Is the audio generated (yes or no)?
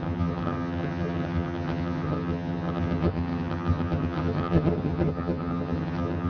yes